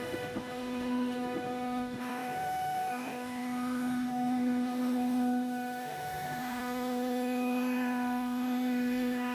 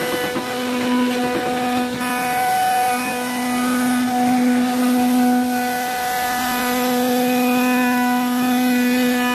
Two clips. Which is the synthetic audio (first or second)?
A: first